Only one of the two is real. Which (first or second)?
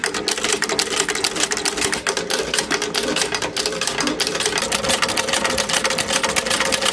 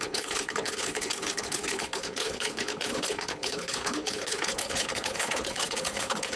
first